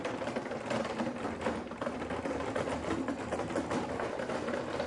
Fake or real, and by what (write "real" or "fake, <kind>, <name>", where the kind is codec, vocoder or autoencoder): real